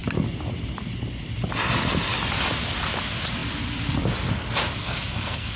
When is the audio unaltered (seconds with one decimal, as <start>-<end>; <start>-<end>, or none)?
0.0-4.8

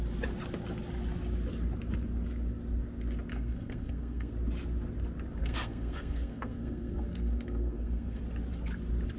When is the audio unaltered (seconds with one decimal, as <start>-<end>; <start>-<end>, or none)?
0.0-3.3; 4.3-5.4; 8.2-9.2

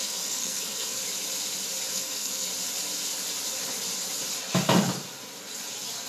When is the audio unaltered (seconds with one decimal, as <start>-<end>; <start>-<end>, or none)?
1.0-1.9; 2.5-6.1

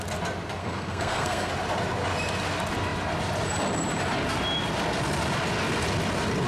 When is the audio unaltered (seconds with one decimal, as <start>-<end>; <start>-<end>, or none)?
0.0-0.6; 1.5-6.5

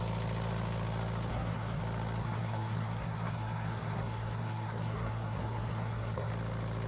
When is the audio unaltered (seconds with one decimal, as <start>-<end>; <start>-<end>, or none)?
0.0-1.3; 1.8-2.2; 6.3-6.9

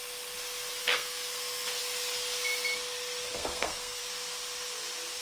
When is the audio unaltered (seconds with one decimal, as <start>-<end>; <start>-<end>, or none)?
0.0-0.8; 1.8-3.3; 4.0-5.2

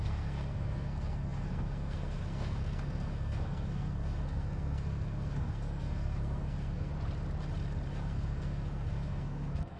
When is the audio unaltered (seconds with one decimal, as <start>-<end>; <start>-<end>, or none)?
6.9-7.9

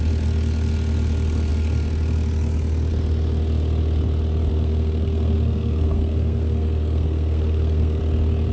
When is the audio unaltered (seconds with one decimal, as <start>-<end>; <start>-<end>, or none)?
0.0-4.5; 8.0-8.5